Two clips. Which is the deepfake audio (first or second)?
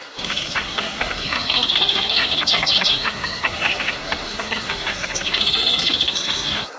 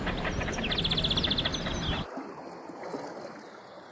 first